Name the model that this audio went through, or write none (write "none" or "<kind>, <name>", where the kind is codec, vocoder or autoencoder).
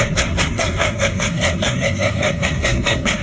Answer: codec, SNAC